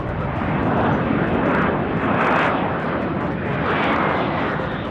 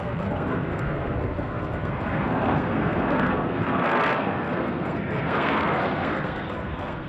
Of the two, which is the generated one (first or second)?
second